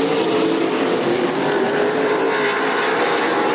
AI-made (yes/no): no